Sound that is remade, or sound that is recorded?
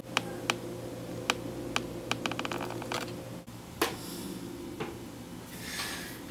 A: recorded